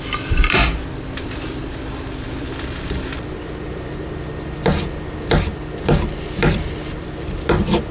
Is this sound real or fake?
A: fake